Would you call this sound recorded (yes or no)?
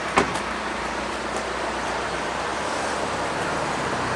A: yes